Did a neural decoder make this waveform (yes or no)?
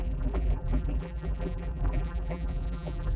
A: yes